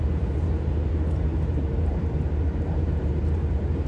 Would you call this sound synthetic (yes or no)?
yes